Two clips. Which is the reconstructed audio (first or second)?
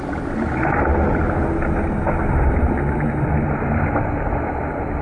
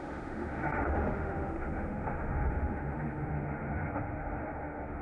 second